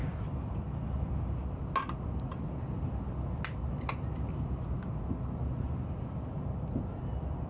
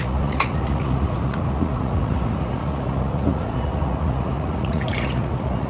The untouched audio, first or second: first